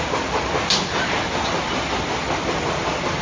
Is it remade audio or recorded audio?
recorded